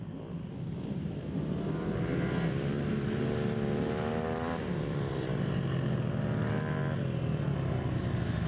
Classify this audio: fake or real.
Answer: real